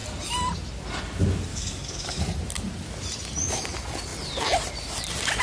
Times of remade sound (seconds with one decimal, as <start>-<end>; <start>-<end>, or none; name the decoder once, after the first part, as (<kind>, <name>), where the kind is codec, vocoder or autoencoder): 1.5-2.2 (codec, DAC)